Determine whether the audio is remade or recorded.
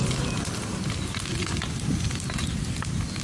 recorded